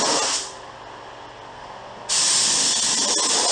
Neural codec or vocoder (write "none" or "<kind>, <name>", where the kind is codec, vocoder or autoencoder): none